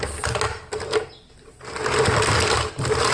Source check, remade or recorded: recorded